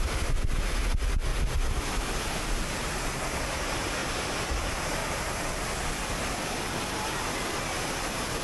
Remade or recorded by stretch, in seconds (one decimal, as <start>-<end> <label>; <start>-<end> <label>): 0.0-8.4 recorded